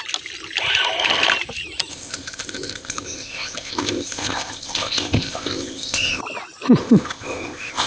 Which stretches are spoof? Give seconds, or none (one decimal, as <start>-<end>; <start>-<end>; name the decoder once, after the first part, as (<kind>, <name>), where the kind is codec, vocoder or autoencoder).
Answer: 1.9-6.2 (codec, ZipCodec); 6.8-7.9